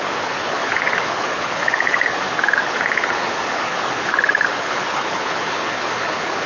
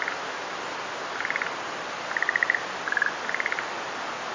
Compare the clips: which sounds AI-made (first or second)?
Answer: first